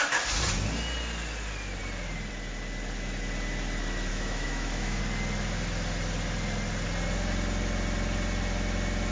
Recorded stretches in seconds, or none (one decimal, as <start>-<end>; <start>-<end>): 0.0-4.1; 5.0-9.1